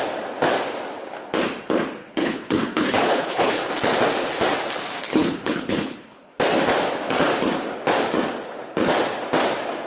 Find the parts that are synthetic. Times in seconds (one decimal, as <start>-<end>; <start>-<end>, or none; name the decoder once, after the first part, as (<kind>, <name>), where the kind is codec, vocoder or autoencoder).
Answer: 2.0-3.6 (codec, HILCodec); 4.8-6.3